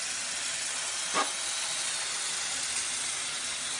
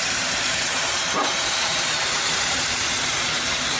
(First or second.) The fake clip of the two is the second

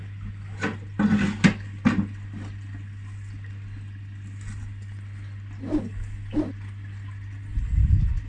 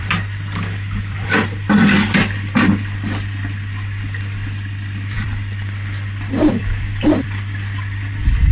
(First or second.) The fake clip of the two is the second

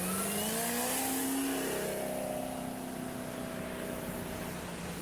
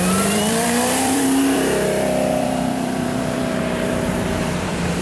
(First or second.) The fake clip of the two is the second